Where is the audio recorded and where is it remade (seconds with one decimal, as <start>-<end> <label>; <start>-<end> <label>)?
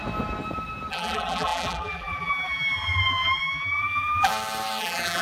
0.0-0.9 recorded; 0.9-4.3 remade; 4.3-4.8 recorded; 4.8-5.2 remade